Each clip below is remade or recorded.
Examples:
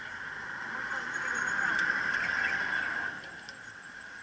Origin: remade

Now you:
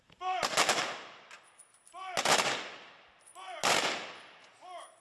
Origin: recorded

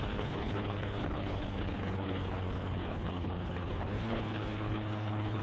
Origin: remade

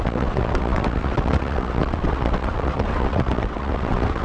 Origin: remade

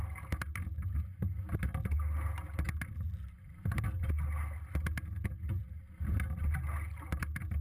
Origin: recorded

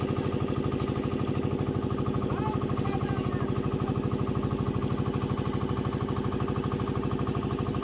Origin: recorded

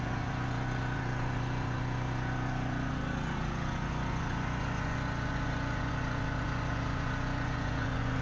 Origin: remade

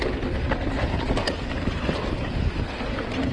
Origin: recorded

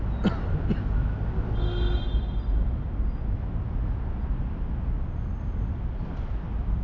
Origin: recorded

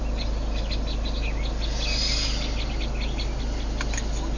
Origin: recorded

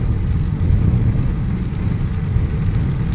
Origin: recorded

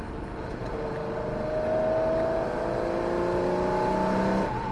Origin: recorded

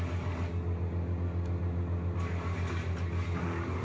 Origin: recorded